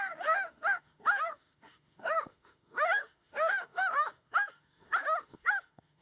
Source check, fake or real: fake